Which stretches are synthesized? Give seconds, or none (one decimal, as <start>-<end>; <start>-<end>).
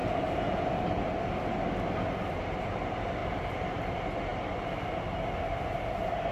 none